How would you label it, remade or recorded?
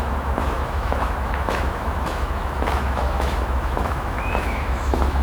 remade